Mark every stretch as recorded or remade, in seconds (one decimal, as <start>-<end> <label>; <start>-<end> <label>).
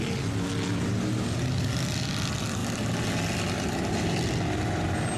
0.0-5.2 recorded